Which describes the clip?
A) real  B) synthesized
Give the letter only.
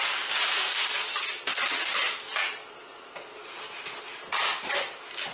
A